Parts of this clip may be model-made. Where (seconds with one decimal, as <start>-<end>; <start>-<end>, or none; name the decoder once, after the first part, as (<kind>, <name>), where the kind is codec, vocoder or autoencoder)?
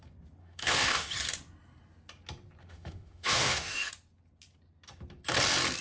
0.4-1.1 (autoencoder, DAC-VAE); 2.6-3.9